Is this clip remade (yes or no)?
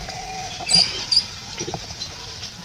yes